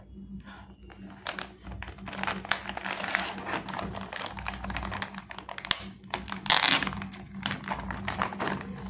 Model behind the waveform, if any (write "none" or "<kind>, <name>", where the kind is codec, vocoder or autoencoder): none